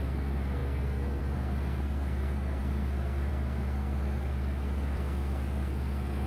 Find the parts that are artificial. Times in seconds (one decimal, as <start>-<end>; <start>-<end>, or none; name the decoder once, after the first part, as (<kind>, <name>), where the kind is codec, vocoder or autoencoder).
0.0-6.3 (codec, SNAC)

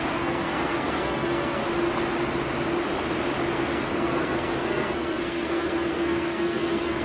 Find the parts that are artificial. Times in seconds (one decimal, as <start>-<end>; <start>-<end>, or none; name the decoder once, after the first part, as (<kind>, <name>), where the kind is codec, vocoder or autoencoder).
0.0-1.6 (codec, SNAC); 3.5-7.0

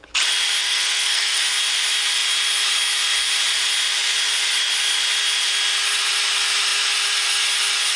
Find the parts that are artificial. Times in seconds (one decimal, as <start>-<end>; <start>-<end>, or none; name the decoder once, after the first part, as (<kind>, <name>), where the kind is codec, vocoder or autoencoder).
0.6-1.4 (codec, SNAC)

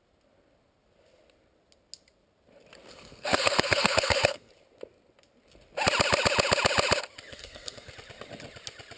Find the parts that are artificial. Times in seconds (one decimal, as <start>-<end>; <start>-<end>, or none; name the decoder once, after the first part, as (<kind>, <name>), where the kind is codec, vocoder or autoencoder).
2.9-4.5 (codec, SNAC); 7.3-7.9

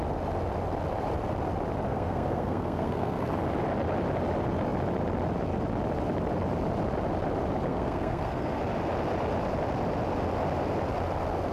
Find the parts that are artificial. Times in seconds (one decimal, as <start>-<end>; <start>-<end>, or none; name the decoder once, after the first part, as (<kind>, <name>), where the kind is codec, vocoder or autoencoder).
1.9-3.4 (codec, SNAC); 7.7-8.6

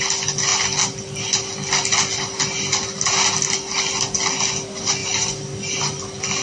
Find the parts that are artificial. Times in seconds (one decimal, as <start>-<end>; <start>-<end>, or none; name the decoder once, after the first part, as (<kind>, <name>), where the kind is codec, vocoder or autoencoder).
none

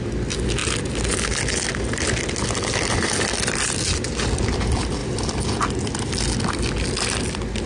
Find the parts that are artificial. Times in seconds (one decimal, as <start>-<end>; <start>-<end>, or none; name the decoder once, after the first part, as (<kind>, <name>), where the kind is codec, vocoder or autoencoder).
none

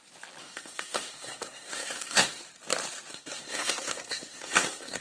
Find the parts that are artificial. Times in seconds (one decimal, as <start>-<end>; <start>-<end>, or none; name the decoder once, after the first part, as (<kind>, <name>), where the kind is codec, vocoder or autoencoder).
0.4-2.4 (codec, SNAC); 3.1-5.0